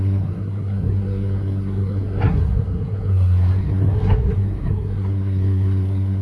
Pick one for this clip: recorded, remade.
remade